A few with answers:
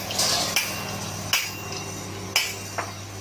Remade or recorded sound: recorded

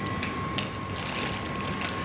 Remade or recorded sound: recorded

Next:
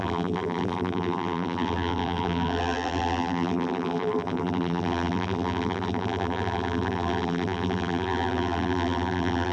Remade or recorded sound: remade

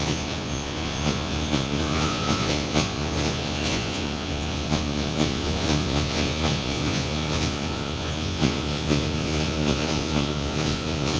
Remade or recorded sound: remade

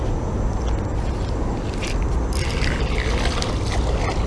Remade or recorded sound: recorded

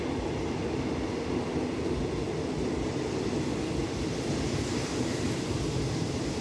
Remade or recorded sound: recorded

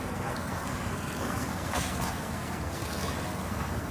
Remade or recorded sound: remade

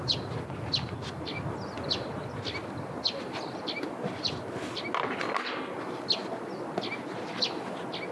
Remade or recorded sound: recorded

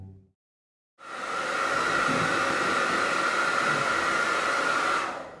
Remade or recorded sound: recorded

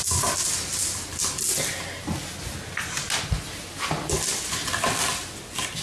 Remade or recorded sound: recorded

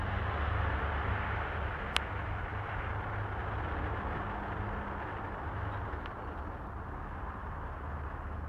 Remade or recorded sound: recorded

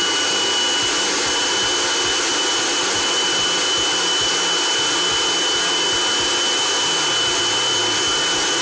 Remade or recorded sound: recorded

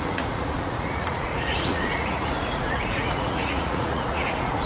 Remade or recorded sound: remade